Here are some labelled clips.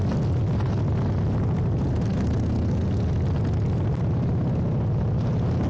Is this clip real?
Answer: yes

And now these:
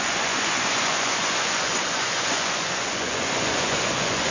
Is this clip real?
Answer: no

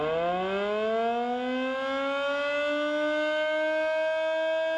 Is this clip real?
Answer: yes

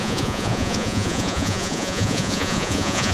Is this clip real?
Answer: no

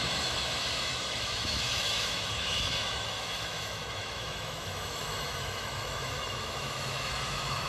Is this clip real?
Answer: no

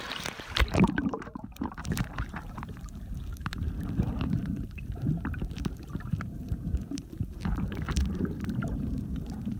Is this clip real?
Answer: no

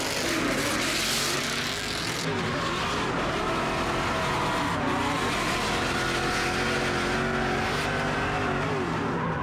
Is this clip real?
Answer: yes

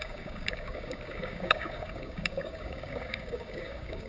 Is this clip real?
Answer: no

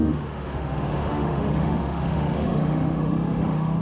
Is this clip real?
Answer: no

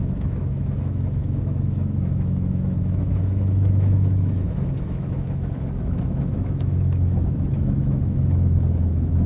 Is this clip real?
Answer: no